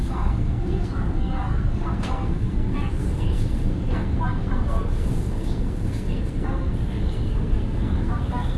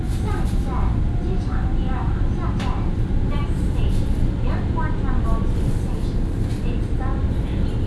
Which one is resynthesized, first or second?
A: first